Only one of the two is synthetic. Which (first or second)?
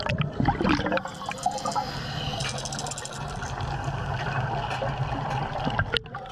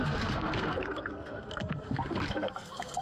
second